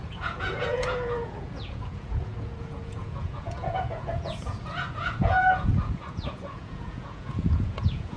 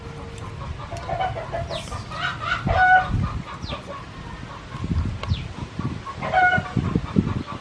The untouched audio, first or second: second